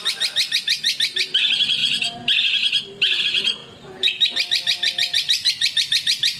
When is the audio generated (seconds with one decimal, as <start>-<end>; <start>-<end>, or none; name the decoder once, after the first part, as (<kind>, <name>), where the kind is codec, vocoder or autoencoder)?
3.6-4.2 (vocoder, Vocos)